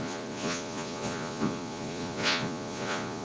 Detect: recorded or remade remade